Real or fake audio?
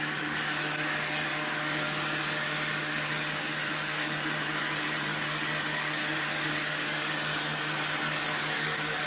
fake